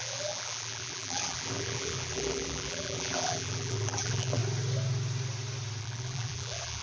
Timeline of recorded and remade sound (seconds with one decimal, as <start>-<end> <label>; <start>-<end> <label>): 0.0-4.4 remade; 4.4-5.8 recorded; 5.8-6.8 remade